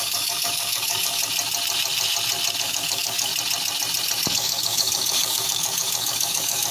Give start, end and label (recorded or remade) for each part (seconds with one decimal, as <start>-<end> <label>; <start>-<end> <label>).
0.0-1.2 remade; 1.2-2.6 recorded; 2.6-3.3 remade; 3.3-4.3 recorded; 4.3-6.7 remade